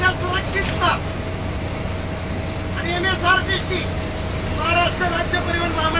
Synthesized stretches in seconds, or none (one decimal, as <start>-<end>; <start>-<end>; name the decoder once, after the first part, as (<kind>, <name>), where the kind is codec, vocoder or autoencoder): none